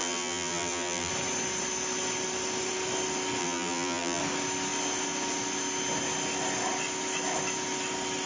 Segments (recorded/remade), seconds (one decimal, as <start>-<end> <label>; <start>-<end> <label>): 0.0-1.1 remade; 1.1-3.4 recorded; 3.4-4.2 remade; 4.2-8.3 recorded